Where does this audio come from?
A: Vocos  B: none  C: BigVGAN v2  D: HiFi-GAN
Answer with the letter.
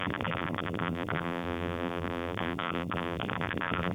C